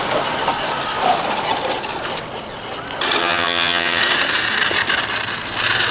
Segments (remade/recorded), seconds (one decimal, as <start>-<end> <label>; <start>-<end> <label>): 0.0-3.2 recorded; 3.2-4.0 remade; 4.0-5.9 recorded